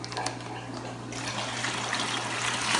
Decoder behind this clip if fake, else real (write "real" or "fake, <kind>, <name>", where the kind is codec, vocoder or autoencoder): real